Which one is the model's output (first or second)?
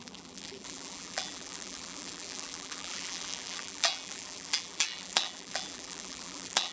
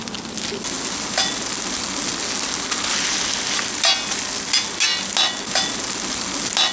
first